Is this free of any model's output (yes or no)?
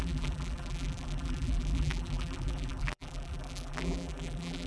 no